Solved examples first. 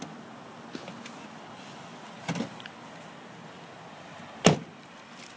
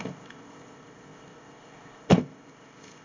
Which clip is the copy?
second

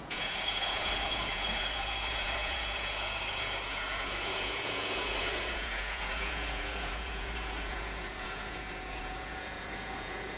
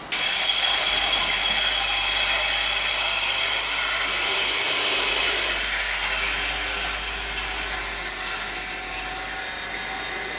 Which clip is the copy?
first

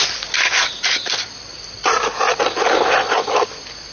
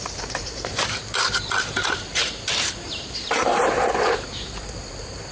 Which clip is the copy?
second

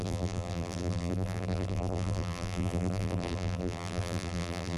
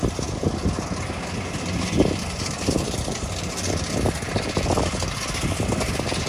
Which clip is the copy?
first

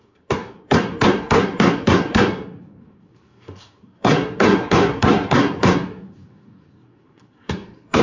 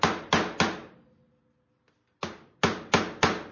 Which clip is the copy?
first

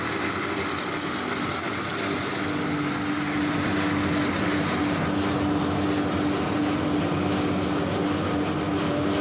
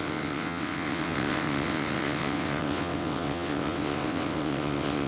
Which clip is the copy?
second